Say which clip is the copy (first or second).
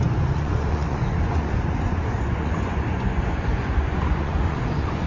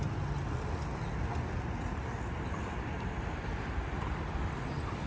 first